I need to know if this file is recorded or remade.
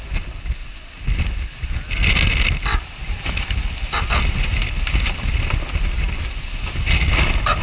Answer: recorded